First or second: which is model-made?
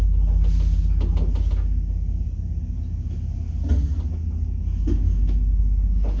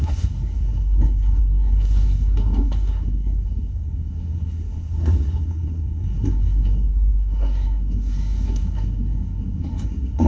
second